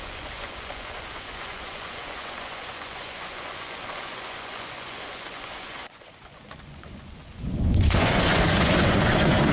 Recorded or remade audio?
remade